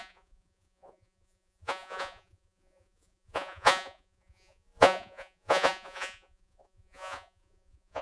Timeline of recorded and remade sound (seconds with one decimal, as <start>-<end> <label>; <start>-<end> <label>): 0.0-8.0 remade